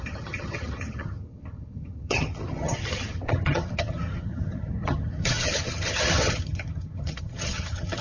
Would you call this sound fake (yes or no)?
yes